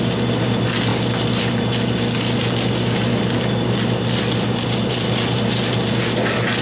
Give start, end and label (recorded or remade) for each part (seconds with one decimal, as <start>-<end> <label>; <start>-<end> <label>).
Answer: 0.0-6.6 recorded